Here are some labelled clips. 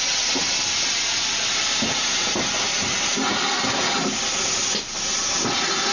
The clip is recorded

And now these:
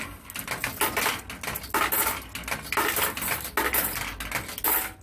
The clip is recorded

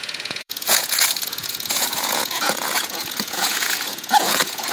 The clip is remade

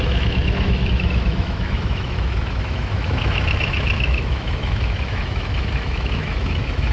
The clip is remade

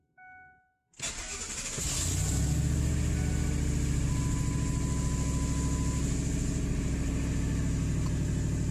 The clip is recorded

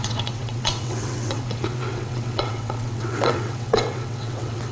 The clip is remade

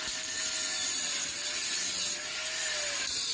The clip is recorded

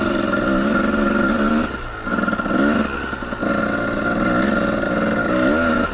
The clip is recorded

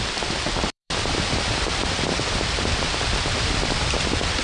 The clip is remade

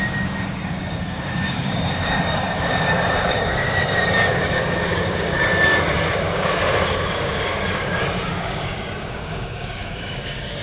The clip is remade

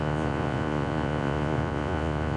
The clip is remade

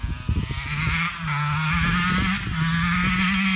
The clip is recorded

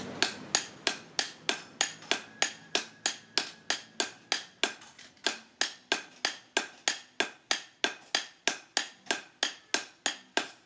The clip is recorded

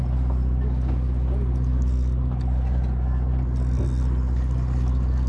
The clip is recorded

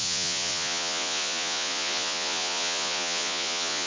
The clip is remade